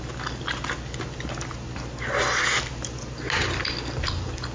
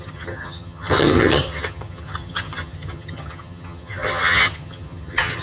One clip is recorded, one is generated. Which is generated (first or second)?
second